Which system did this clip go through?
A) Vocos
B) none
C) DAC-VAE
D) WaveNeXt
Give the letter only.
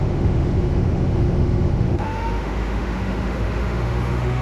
C